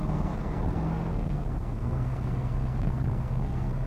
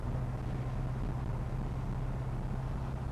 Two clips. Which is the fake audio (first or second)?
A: first